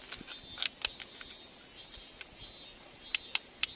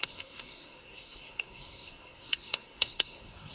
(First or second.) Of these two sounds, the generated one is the second